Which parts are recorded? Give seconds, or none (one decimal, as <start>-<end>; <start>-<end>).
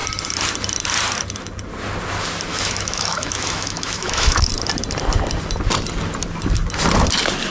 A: 0.0-2.5; 4.5-7.5